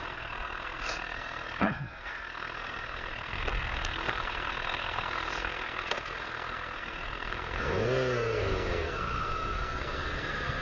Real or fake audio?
fake